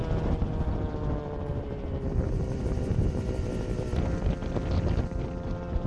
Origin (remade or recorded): recorded